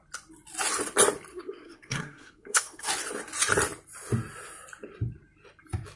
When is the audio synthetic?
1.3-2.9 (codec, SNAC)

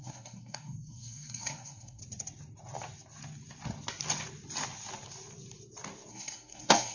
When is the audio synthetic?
0.0-2.0 (codec, SNAC); 6.1-6.9

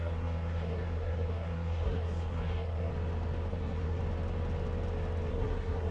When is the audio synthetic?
0.0-2.9 (codec, SNAC); 3.5-4.0; 5.3-5.9

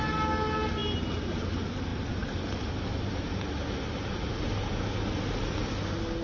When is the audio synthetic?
none

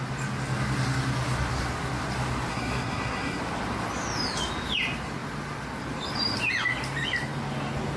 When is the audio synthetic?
2.5-3.4 (codec, SNAC)